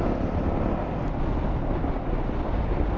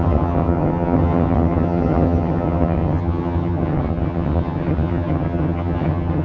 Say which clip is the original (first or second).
first